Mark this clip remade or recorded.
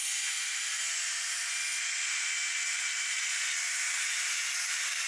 recorded